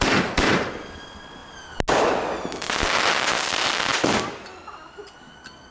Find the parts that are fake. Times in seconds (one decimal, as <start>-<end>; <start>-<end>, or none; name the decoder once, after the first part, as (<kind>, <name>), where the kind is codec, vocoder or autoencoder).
none